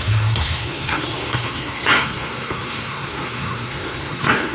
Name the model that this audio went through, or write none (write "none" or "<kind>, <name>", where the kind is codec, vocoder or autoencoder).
codec, SNAC